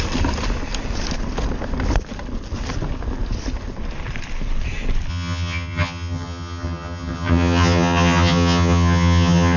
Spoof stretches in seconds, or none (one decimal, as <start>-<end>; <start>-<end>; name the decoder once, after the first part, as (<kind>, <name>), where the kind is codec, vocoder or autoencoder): 5.1-9.6 (vocoder, HiFi-GAN)